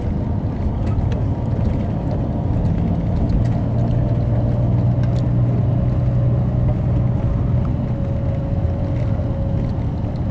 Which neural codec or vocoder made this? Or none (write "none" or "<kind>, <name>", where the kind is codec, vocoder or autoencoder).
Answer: none